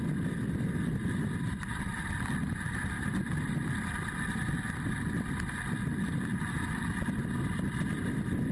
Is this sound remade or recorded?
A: recorded